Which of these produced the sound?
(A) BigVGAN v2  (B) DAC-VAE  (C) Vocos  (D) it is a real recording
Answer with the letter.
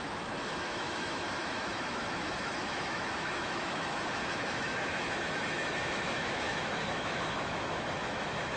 B